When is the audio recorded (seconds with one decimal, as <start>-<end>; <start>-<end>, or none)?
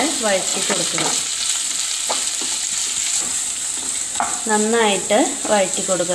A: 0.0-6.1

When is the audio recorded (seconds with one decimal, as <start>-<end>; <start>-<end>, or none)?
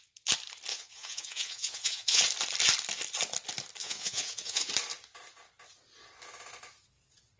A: 0.0-0.7; 2.2-3.8; 4.7-7.4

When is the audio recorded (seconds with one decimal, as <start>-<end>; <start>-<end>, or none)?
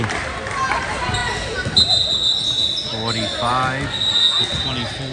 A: 0.0-5.1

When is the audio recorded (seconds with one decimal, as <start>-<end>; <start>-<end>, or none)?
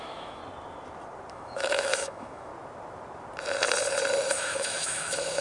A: 0.4-1.3; 2.5-4.3